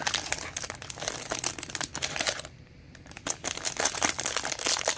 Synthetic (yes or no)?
yes